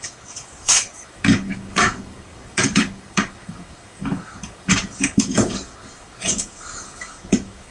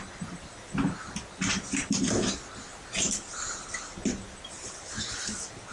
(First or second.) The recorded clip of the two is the second